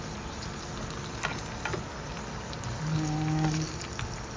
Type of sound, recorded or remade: recorded